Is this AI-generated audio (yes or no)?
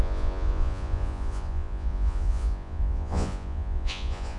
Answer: yes